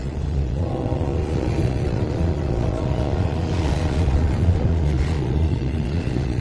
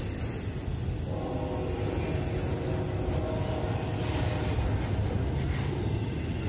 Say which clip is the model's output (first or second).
first